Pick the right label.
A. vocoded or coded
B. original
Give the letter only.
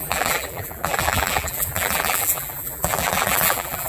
A